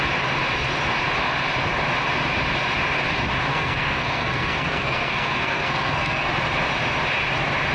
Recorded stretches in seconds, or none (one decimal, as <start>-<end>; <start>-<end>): 0.0-3.5; 6.3-7.7